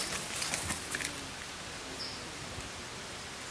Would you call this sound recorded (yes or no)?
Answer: yes